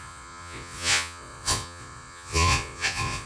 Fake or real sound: fake